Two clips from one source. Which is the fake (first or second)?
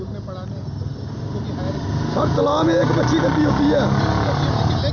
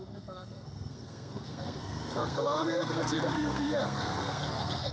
second